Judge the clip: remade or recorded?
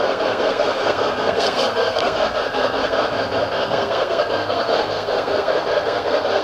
remade